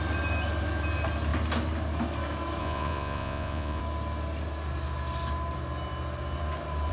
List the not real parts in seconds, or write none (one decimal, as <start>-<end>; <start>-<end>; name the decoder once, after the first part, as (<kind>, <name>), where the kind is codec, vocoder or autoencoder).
2.6-3.8 (vocoder, Vocos)